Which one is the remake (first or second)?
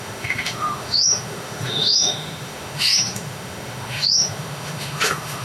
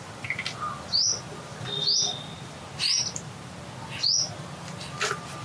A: first